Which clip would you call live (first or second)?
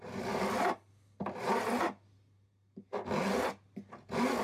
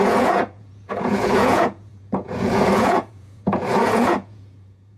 first